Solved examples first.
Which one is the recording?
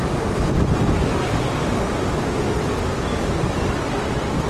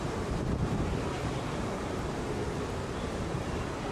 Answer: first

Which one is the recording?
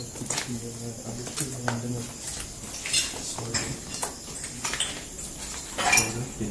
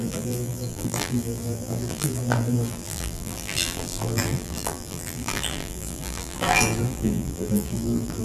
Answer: first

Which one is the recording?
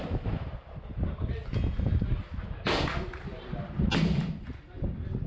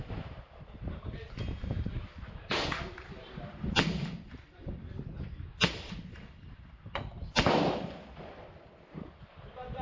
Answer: first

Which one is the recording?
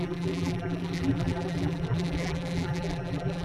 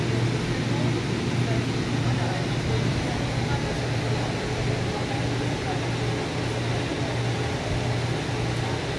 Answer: second